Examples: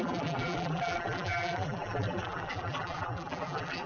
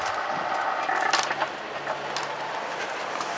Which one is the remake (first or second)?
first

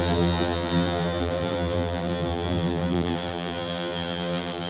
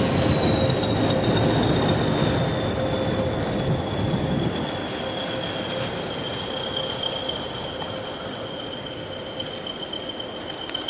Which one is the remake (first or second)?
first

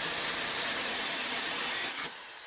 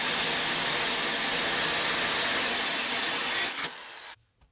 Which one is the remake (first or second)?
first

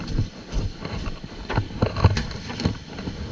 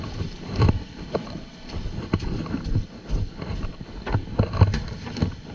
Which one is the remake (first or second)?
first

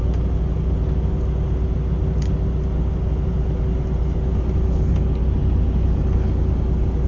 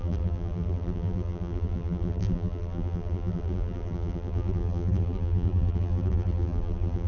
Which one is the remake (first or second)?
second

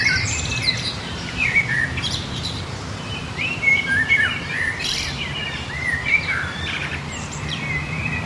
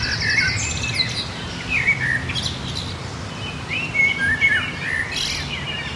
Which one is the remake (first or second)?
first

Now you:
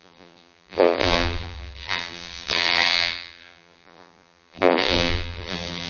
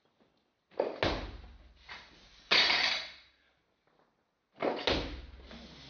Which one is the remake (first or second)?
first